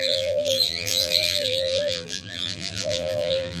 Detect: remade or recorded remade